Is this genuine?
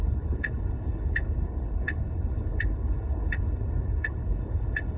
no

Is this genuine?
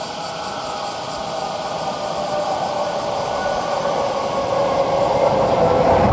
yes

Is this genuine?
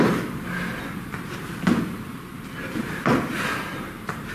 yes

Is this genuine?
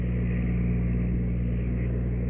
yes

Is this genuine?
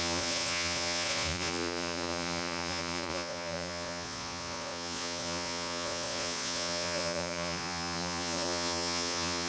no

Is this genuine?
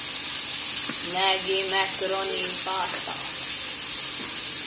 yes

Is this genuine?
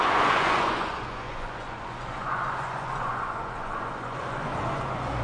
no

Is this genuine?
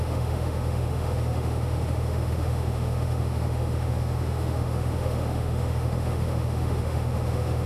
no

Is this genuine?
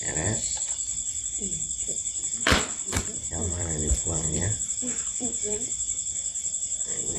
no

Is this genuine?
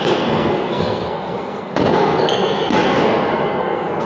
no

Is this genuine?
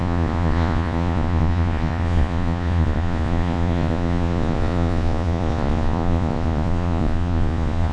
no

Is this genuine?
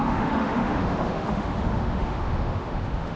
no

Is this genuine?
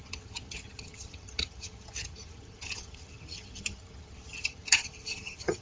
no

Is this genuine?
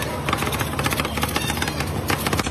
yes